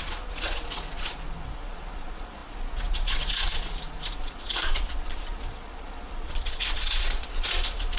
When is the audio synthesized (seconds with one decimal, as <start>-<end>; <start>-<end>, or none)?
0.0-8.0